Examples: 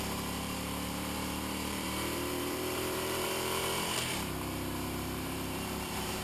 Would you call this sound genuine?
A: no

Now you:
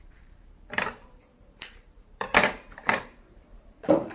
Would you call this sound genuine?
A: no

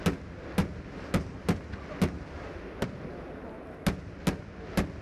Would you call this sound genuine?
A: yes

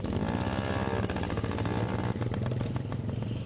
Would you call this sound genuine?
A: yes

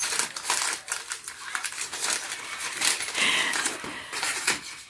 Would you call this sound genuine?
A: no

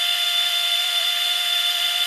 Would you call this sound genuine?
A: no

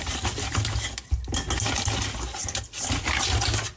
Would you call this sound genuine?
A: yes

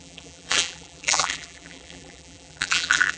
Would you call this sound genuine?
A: no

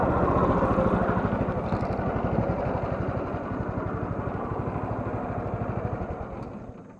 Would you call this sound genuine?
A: yes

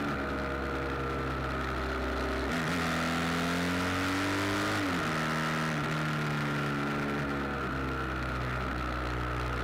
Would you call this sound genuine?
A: yes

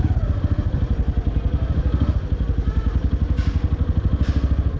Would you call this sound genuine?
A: yes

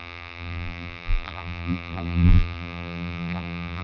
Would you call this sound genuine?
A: no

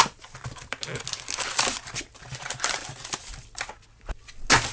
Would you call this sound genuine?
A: yes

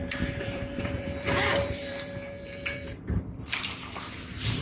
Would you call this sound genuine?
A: no